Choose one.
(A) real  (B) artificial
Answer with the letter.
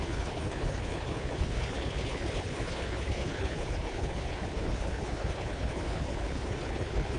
B